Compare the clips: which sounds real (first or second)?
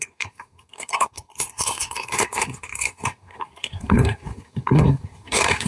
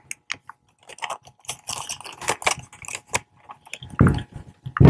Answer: second